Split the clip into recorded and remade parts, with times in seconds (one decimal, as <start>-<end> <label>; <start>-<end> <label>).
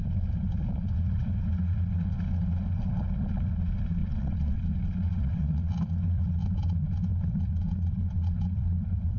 0.0-4.0 recorded; 4.0-4.6 remade; 4.6-5.1 recorded; 5.1-5.7 remade; 5.7-9.2 recorded